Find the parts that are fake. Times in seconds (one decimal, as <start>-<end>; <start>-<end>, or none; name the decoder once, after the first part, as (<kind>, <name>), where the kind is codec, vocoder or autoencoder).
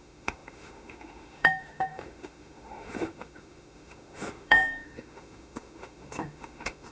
0.0-6.9 (autoencoder, DAC-VAE)